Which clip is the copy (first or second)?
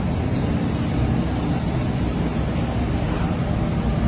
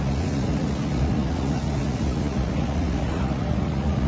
second